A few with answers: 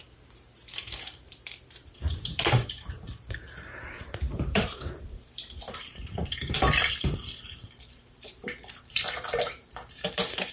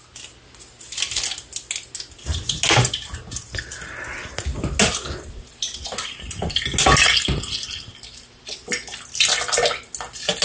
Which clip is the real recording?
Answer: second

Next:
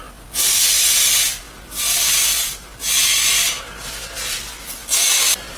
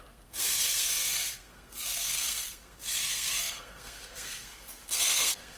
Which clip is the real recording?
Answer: first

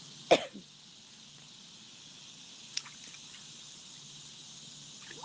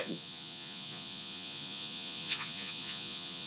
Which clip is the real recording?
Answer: first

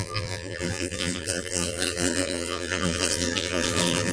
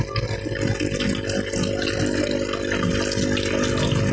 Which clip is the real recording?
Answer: second